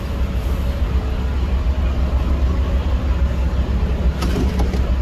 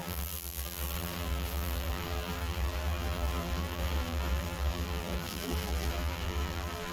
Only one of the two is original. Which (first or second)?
first